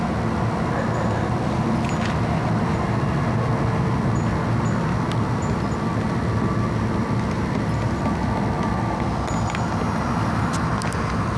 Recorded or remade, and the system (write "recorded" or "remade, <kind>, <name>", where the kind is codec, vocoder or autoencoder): recorded